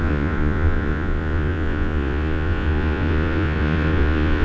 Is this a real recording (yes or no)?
no